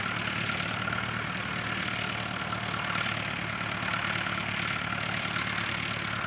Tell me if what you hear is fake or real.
real